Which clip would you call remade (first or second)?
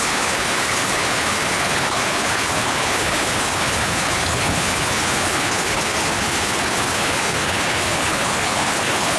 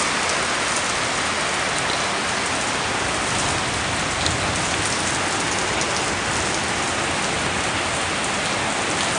first